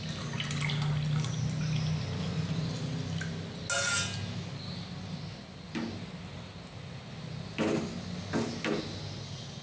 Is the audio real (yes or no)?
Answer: yes